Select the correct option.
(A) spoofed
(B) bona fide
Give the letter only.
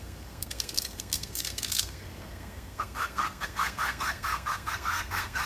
A